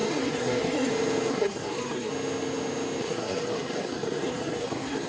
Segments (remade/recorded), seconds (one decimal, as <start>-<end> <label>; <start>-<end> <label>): 0.0-0.9 remade; 0.9-1.3 recorded; 1.3-2.1 remade; 2.1-3.0 recorded; 3.0-5.1 remade